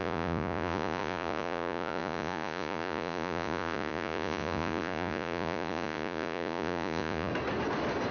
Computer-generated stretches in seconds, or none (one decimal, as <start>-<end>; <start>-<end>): 0.0-7.3